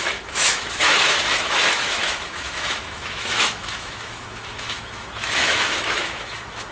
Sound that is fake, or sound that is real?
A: fake